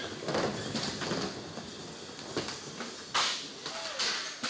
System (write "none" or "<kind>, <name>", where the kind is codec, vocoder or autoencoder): none